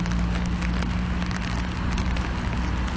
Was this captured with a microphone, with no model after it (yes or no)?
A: yes